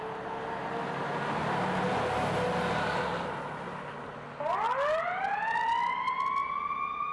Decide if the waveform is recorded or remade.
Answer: recorded